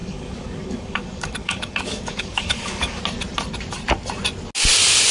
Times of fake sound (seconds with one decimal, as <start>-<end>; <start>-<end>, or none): 0.0-3.0